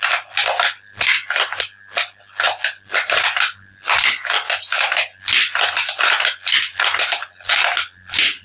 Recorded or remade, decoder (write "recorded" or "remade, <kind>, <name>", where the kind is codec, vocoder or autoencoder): recorded